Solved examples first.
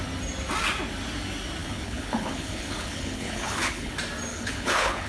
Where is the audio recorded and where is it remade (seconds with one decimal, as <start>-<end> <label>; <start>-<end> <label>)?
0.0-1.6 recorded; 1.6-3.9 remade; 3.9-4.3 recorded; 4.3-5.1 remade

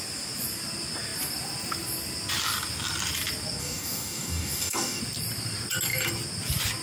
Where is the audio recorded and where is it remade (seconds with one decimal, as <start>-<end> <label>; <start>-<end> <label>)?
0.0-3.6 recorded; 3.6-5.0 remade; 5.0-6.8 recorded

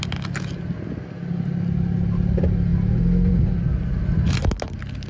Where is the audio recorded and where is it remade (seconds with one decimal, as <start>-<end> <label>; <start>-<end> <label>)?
0.0-5.1 recorded

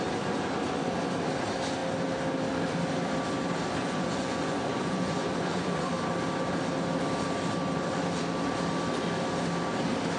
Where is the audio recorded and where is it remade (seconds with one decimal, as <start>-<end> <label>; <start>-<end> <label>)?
0.0-3.8 recorded; 3.8-5.9 remade; 5.9-10.2 recorded